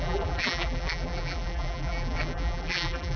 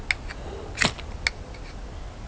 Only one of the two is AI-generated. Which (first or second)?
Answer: first